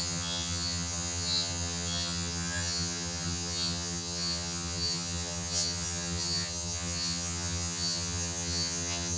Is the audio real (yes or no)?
no